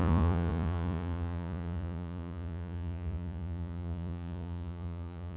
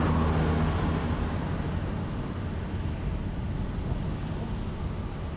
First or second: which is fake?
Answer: first